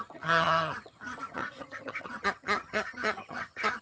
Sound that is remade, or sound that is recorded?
remade